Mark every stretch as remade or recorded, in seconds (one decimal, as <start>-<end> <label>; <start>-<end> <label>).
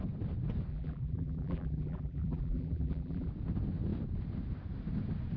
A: 0.0-0.7 recorded; 0.7-3.3 remade; 3.3-5.4 recorded